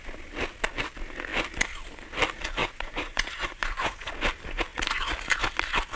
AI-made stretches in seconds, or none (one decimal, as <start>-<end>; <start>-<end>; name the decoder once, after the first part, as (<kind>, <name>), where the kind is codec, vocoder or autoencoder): 2.6-4.1 (vocoder, Vocos)